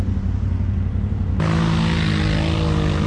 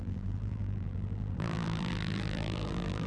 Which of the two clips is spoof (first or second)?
second